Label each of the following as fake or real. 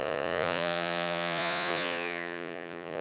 fake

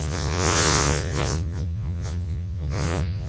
fake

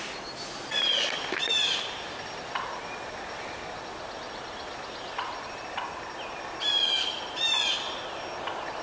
real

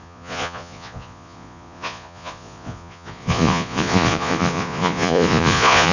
fake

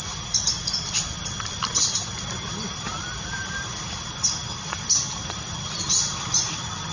real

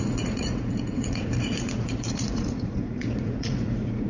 fake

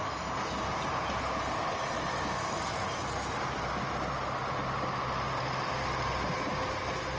real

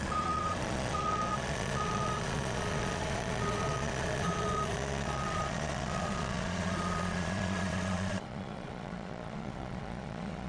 fake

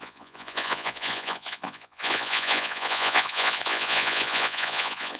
fake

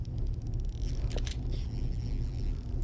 real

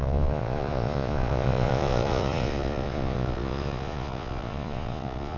fake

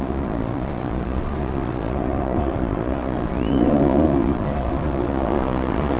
fake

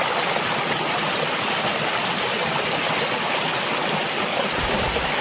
real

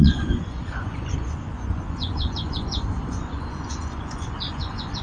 fake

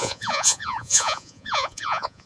fake